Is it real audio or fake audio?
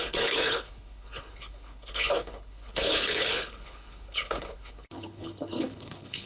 fake